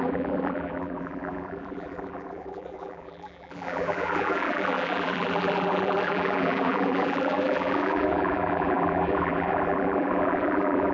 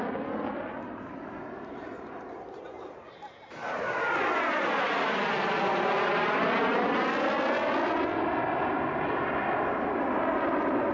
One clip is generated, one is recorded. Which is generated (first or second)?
first